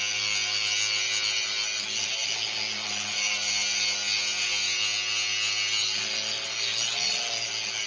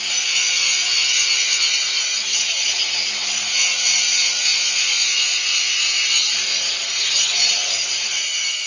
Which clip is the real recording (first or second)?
first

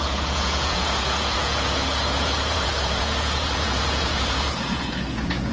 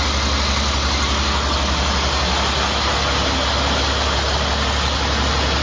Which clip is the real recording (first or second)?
second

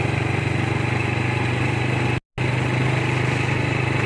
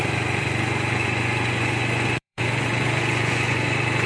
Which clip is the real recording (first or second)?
first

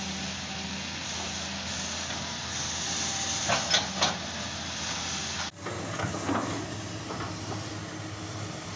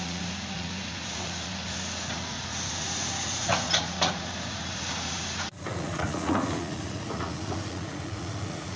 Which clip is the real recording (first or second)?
first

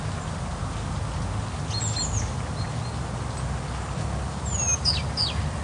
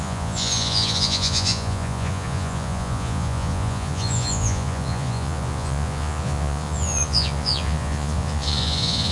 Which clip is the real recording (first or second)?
first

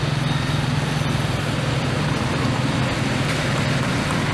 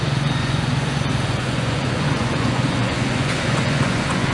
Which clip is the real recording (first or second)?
first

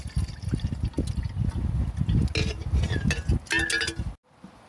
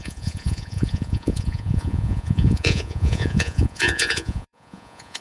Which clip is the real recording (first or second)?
first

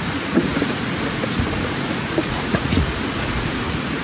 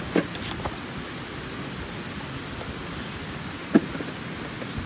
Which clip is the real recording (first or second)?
second